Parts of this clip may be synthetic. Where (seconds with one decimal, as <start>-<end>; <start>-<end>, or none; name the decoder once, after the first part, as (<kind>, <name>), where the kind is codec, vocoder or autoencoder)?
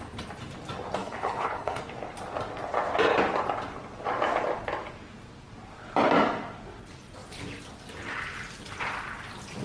1.0-1.8 (codec, HILCodec)